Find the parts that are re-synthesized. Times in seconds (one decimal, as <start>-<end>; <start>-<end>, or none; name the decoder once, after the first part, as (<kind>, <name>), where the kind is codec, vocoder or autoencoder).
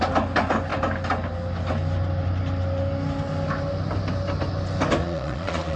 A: 5.0-5.8 (vocoder, Vocos)